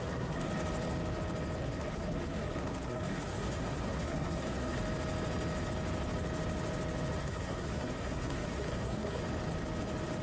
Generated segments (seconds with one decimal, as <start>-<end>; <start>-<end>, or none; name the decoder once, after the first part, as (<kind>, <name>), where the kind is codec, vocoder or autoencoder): 0.0-0.5 (codec, SNAC); 1.6-4.8; 7.2-9.2

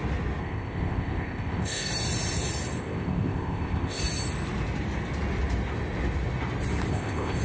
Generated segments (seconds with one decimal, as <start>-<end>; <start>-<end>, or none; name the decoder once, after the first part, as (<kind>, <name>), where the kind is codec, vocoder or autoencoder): 0.4-1.9 (codec, ZipCodec); 2.8-4.0; 6.9-7.4

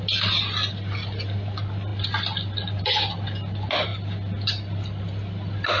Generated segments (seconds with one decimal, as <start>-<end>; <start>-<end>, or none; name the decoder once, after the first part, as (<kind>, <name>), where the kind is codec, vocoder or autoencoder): none

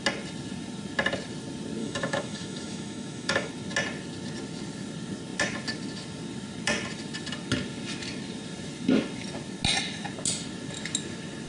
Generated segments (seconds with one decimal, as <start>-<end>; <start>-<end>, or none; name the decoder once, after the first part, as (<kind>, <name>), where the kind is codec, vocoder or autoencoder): 1.8-3.5 (autoencoder, DAC-VAE)

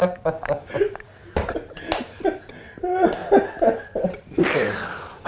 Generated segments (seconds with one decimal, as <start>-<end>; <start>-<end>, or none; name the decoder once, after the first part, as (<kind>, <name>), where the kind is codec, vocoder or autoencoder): 0.0-0.7 (codec, DAC)

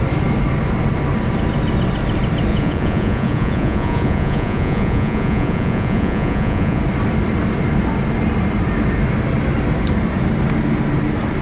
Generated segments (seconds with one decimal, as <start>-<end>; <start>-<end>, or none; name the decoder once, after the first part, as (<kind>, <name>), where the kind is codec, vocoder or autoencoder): 2.5-6.8 (vocoder, Vocos)

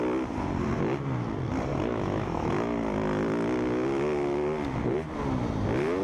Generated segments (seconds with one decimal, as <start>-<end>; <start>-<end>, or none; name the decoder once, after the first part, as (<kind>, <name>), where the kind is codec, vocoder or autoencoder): 1.9-2.5 (autoencoder, DAC-VAE)